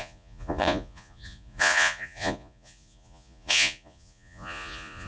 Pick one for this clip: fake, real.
fake